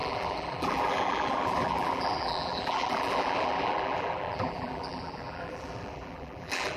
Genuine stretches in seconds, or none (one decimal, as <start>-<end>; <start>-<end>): none